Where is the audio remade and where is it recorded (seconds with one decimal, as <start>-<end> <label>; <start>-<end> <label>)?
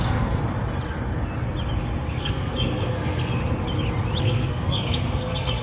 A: 0.0-0.4 remade; 0.4-2.1 recorded; 2.1-3.3 remade; 3.3-4.2 recorded; 4.2-5.6 remade